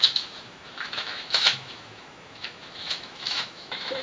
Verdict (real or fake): fake